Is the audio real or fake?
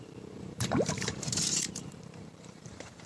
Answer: fake